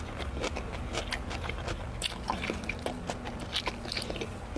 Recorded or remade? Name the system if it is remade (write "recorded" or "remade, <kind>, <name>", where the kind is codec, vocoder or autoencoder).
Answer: recorded